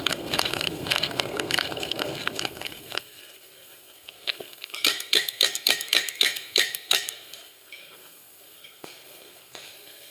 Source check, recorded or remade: remade